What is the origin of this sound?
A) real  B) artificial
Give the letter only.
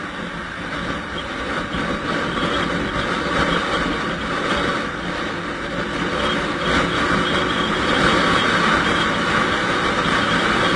A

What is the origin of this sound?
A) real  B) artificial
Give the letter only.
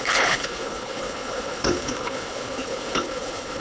B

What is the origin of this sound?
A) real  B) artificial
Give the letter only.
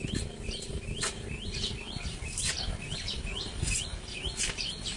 A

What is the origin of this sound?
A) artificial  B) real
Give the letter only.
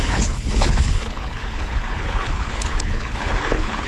A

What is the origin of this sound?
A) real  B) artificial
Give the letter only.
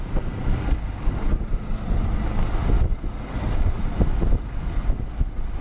A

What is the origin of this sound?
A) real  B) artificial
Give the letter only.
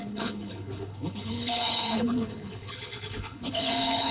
B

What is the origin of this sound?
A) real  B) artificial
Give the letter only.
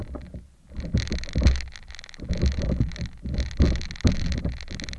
A